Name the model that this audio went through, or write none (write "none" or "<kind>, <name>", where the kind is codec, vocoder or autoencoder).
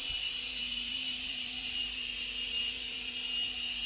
vocoder, BigVGAN v2